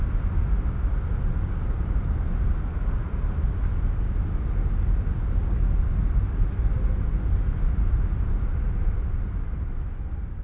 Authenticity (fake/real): real